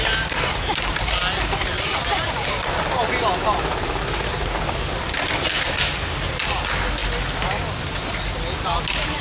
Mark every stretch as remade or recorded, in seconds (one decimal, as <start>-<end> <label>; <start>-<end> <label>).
0.0-9.2 recorded